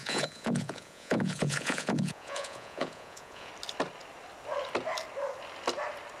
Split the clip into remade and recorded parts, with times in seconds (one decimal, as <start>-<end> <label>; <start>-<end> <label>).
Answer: 0.0-3.5 remade; 3.5-6.2 recorded